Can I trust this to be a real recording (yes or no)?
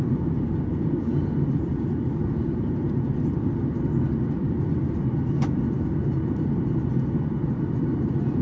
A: yes